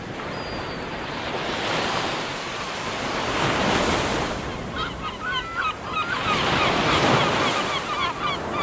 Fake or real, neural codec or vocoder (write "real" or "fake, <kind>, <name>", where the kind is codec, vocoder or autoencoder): real